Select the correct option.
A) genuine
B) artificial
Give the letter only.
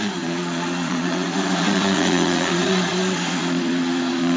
B